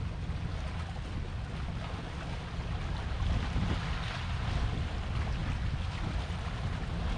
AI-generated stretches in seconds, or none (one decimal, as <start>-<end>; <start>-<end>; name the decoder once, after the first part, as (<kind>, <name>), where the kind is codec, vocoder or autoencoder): none